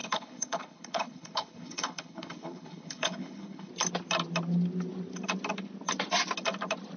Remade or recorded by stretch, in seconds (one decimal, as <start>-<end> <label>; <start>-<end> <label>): 0.0-3.7 remade; 3.7-7.0 recorded